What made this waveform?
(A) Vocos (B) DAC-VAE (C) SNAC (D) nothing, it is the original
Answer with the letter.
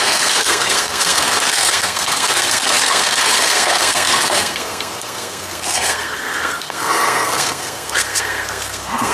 C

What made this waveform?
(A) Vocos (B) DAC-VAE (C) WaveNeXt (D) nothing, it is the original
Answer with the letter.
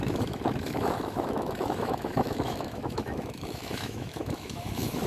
B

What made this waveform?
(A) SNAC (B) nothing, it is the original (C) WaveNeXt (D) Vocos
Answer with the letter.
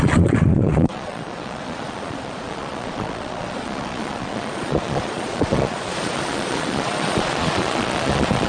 D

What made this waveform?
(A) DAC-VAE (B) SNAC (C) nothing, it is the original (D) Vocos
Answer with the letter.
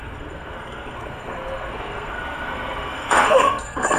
B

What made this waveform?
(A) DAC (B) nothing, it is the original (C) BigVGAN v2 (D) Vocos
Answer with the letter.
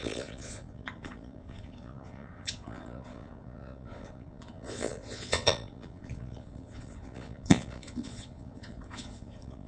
D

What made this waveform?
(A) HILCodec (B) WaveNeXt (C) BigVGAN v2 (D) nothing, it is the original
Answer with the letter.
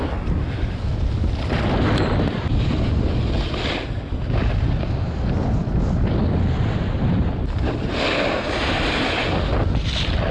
D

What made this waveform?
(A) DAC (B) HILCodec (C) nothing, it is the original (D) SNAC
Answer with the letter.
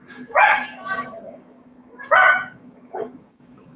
A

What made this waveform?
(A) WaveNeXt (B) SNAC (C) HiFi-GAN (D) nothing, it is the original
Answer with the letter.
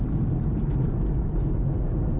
D